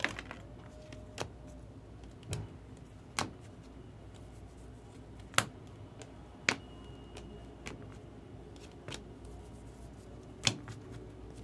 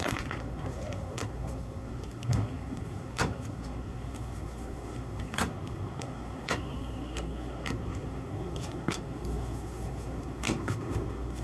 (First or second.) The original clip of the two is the first